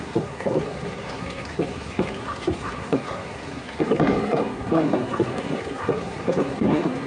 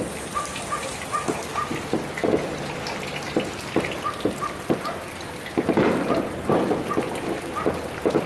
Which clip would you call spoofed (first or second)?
first